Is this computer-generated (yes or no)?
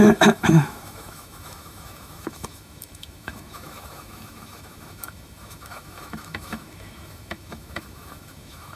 yes